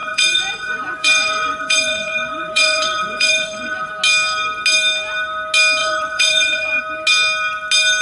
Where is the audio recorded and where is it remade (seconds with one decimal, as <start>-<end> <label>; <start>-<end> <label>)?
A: 0.0-3.9 remade; 3.9-5.8 recorded; 5.8-6.8 remade; 6.8-8.0 recorded